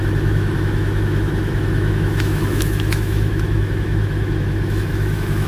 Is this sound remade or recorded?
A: remade